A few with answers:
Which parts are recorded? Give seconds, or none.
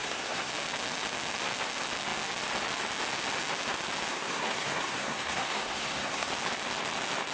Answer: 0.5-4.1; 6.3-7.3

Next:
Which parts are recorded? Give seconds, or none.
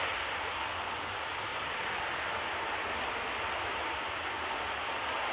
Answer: 0.0-5.3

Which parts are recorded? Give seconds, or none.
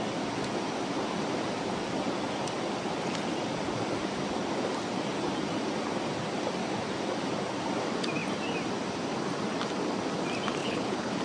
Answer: 0.0-10.6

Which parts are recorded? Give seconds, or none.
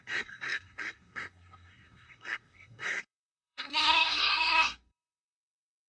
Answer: none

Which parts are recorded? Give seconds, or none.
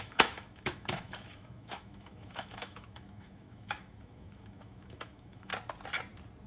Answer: 5.5-6.5